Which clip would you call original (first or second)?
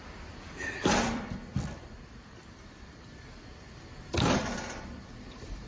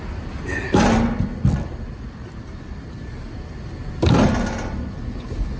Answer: second